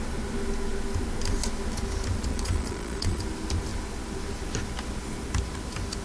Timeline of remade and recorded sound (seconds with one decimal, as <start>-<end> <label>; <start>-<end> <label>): 0.0-2.3 recorded; 2.3-3.2 remade; 3.2-6.0 recorded